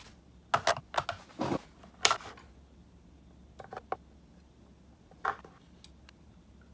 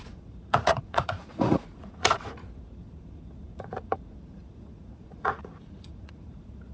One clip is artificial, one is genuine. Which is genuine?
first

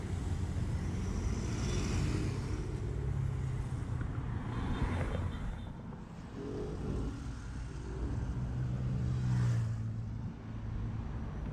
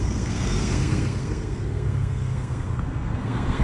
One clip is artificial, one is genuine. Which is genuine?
first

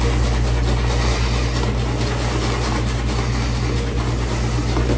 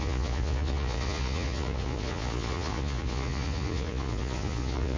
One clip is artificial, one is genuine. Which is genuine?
first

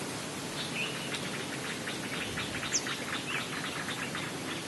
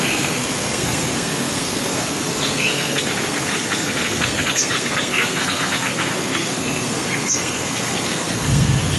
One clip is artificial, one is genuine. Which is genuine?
first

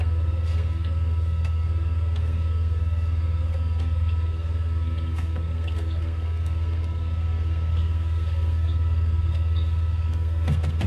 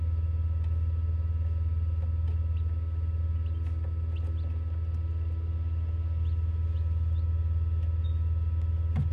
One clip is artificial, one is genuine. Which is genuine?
second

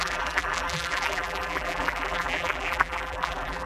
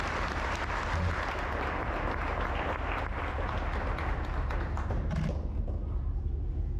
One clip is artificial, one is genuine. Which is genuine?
second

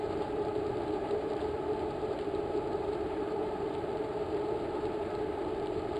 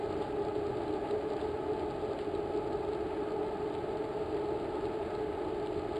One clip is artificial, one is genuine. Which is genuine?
second